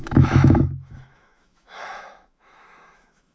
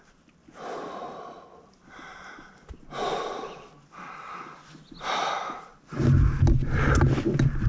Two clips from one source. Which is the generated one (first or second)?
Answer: first